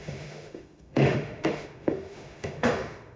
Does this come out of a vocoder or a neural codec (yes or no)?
yes